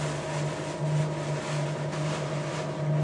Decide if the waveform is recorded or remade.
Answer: recorded